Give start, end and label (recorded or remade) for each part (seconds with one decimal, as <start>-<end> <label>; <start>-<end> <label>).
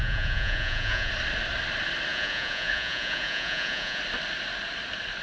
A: 0.0-1.1 remade; 1.1-2.1 recorded; 2.1-4.0 remade; 4.0-5.2 recorded